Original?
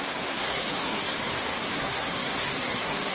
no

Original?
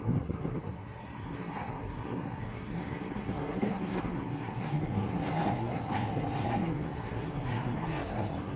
no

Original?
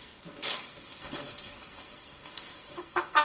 no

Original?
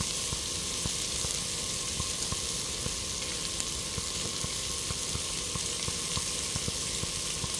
yes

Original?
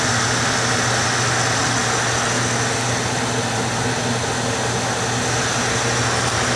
yes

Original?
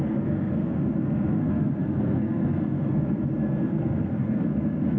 no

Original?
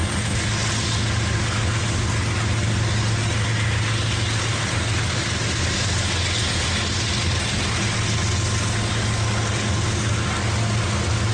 yes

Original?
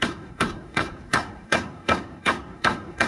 no